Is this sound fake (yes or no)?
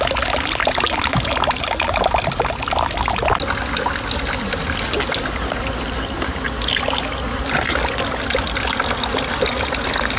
no